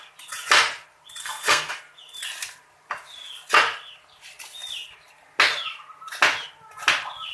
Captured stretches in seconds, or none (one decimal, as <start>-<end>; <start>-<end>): 0.0-1.2; 1.7-7.3